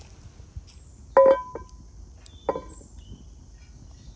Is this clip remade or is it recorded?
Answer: recorded